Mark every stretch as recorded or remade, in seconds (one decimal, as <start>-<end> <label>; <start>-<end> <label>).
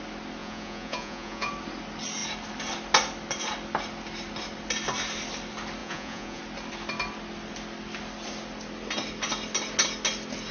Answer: 0.0-0.4 recorded; 0.4-1.5 remade; 1.5-5.8 recorded; 5.8-6.4 remade; 6.4-10.5 recorded